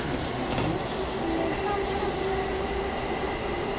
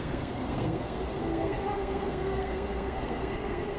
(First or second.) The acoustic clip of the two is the first